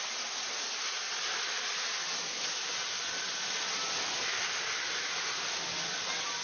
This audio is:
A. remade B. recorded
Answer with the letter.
B